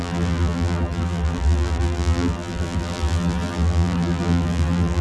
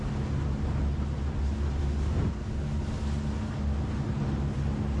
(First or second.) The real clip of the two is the second